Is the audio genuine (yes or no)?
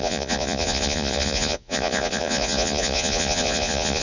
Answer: no